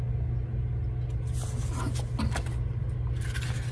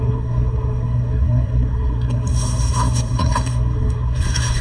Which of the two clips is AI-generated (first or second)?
second